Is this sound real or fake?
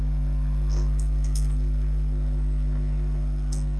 fake